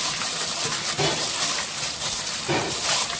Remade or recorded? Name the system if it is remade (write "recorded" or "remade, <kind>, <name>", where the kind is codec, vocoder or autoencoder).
recorded